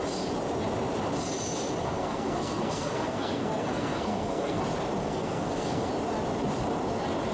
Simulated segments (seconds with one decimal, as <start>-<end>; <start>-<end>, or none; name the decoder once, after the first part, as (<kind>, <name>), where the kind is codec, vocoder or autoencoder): 1.8-4.6 (codec, SNAC); 5.0-5.9